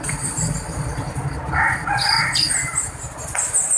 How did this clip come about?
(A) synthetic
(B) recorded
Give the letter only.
B